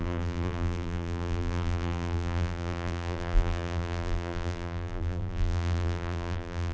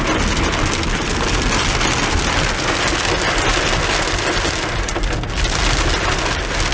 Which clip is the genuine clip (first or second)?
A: second